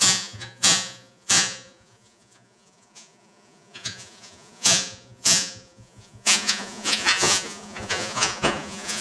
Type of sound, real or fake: fake